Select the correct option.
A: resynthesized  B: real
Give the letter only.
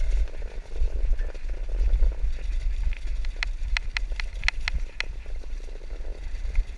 B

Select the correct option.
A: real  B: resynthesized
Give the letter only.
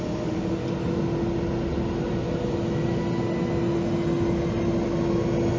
A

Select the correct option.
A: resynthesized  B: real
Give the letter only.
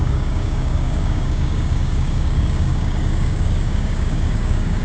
A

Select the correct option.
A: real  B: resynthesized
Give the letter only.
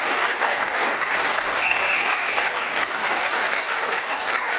B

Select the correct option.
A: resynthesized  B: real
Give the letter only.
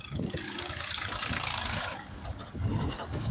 A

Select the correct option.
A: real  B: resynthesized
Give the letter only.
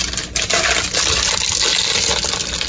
A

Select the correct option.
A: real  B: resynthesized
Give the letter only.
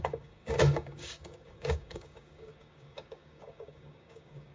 B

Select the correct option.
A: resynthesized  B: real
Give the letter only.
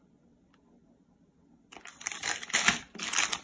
B